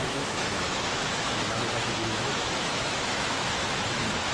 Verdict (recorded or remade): remade